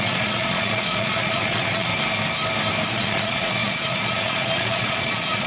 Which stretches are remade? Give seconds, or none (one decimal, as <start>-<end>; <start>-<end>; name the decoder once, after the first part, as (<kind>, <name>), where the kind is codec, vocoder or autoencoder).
0.0-1.9 (vocoder, Vocos); 2.9-5.5